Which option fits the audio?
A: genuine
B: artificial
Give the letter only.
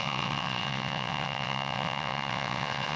B